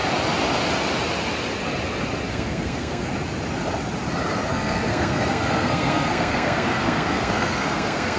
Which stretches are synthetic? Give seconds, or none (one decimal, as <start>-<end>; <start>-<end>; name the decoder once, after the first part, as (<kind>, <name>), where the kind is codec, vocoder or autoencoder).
2.3-3.1 (codec, SNAC); 4.5-8.2